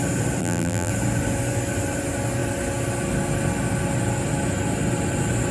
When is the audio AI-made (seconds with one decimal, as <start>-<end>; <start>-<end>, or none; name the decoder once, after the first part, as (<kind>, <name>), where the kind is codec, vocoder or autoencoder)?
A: 0.4-0.9 (vocoder, BigVGAN v2)